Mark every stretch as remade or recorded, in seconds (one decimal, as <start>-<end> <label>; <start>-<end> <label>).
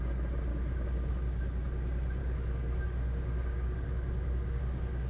0.0-0.5 recorded; 0.5-1.1 remade; 1.1-2.2 recorded; 2.2-5.1 remade